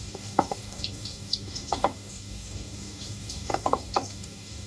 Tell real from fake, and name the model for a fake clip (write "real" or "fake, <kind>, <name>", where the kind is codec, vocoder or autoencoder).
fake, codec, DAC